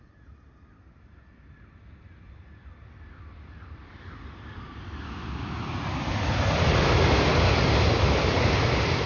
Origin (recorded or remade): recorded